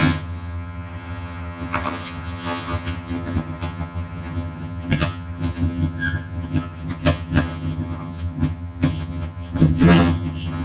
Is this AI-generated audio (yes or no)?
yes